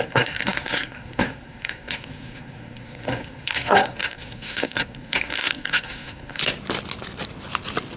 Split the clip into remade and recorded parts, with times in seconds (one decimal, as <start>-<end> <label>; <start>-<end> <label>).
0.0-6.4 remade; 6.4-8.0 recorded